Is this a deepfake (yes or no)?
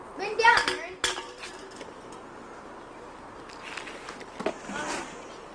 no